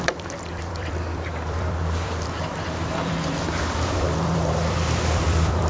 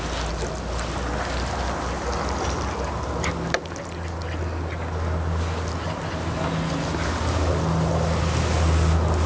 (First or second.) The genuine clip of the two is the second